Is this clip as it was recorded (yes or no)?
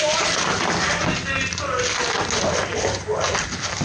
yes